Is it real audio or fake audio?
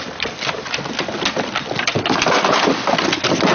real